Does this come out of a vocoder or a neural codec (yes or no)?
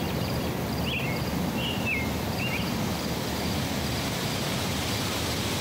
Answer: no